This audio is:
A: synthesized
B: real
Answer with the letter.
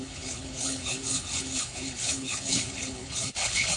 A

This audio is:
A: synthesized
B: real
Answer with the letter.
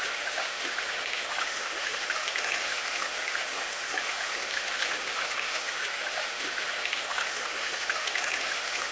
A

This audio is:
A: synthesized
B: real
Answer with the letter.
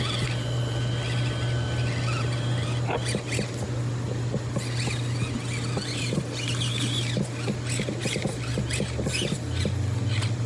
B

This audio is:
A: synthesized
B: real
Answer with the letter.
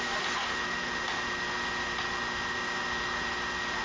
B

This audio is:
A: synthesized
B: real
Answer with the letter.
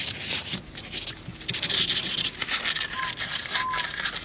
B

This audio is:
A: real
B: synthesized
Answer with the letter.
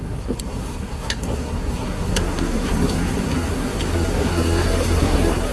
B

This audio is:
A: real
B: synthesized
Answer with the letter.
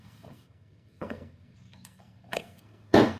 B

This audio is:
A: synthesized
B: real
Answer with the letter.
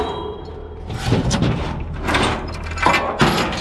B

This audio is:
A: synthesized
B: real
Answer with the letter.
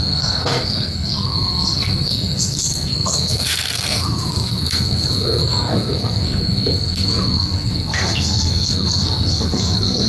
A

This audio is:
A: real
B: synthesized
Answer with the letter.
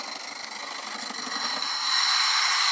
A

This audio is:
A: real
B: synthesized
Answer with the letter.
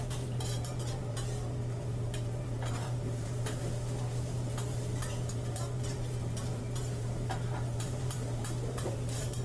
B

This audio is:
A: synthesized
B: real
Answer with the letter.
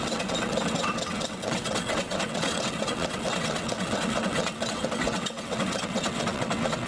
A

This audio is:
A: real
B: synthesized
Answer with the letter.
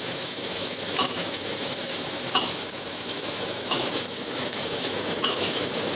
B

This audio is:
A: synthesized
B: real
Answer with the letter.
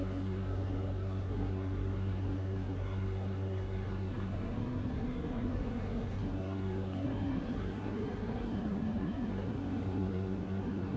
A